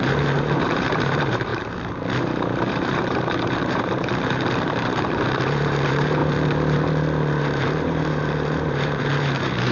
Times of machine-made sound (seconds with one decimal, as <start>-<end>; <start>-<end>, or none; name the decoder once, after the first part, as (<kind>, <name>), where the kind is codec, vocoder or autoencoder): 0.0-6.2 (vocoder, BigVGAN v2); 7.4-9.7